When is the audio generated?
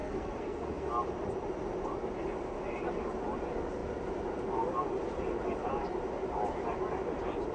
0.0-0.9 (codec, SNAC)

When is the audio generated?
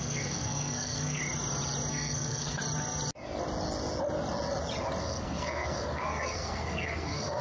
0.0-1.2 (codec, SNAC); 1.9-2.6; 5.0-7.4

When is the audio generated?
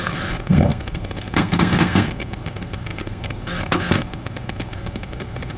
0.0-5.6 (codec, SNAC)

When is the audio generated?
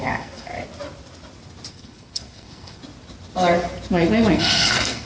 0.0-0.5 (codec, SNAC); 1.7-2.8; 4.3-5.1